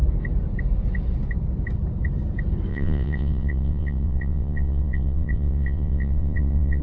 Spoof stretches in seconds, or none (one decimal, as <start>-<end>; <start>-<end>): 2.7-6.8